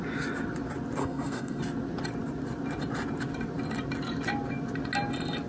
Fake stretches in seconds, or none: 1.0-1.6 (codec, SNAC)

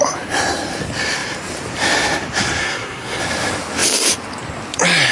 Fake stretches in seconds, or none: 2.6-3.2 (codec, SNAC)

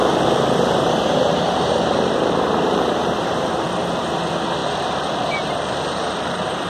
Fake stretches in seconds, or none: 0.0-4.0 (vocoder, BigVGAN v2); 4.6-6.7

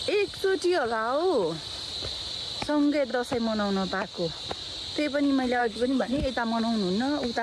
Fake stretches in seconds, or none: 5.6-6.2 (codec, SNAC)